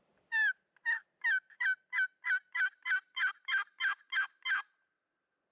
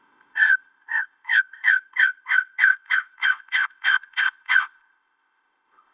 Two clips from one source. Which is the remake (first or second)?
second